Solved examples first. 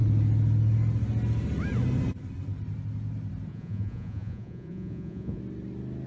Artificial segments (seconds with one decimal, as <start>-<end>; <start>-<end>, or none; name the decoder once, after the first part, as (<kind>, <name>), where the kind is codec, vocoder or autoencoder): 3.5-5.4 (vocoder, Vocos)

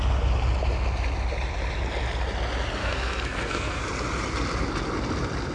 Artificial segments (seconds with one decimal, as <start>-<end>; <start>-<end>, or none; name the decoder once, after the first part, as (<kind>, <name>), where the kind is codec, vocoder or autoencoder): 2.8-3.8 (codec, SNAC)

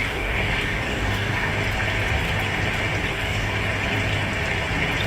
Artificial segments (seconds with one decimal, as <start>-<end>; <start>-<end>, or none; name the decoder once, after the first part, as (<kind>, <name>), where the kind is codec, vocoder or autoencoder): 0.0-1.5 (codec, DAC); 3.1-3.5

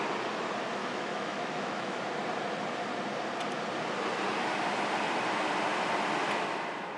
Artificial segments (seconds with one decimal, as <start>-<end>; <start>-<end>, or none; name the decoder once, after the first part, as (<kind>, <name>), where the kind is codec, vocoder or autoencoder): 0.8-2.0 (autoencoder, DAC-VAE)

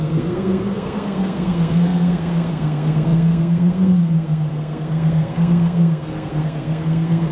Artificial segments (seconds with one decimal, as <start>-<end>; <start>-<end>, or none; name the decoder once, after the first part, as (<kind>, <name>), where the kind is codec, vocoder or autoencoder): 0.0-7.3 (codec, SNAC)